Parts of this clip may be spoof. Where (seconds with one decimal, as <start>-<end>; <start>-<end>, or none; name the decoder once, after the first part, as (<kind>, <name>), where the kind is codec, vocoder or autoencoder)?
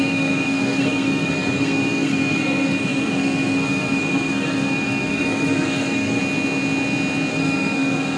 0.0-6.2 (codec, SNAC); 7.3-8.2